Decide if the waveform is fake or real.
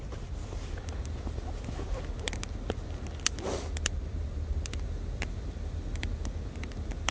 real